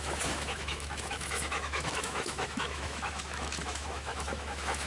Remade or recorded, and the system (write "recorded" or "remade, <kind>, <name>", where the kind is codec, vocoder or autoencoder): remade, autoencoder, DAC-VAE